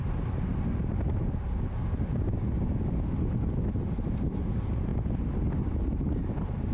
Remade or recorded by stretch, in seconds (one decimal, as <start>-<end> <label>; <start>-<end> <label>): 0.0-6.7 recorded